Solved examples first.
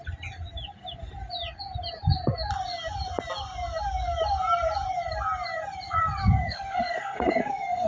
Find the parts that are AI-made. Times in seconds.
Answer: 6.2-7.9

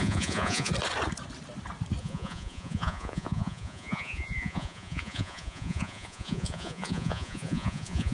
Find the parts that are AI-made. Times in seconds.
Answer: 0.0-0.7; 2.0-8.1

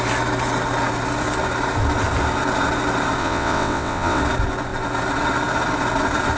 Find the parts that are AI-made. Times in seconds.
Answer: 3.2-4.2